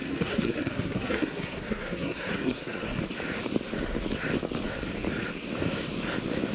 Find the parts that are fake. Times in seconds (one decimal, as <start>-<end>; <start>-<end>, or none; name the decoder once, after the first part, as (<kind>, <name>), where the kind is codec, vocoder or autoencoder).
0.0-3.0 (codec, SNAC)